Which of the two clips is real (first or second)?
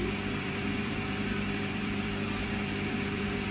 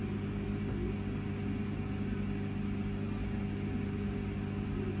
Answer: second